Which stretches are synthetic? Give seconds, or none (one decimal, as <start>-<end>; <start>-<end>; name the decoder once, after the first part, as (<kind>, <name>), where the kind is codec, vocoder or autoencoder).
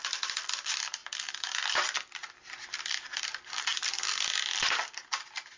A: 0.0-5.6 (vocoder, BigVGAN v2)